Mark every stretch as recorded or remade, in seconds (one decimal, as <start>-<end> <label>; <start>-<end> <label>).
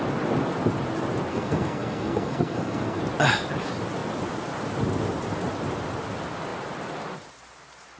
0.0-1.3 recorded; 1.3-3.0 remade; 3.0-8.0 recorded